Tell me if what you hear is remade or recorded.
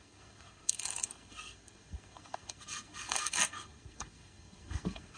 remade